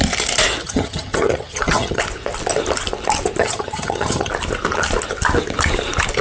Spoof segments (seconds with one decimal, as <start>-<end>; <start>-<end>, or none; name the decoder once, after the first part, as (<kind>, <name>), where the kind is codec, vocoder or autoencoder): 0.6-2.0 (vocoder, HiFi-GAN); 3.4-4.3